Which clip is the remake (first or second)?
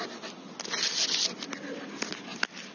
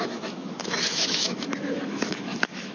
second